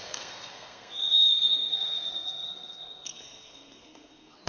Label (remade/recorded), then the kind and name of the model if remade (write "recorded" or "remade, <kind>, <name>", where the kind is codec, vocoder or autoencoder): remade, codec, SNAC